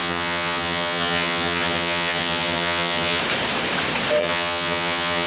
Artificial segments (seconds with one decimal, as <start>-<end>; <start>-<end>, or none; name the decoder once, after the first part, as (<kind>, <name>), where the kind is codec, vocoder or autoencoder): 0.0-3.2 (vocoder, HiFi-GAN); 4.2-5.3